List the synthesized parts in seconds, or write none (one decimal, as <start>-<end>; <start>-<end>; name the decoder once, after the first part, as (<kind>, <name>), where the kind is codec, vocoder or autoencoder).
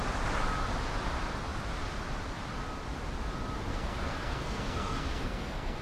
3.7-5.8 (codec, SNAC)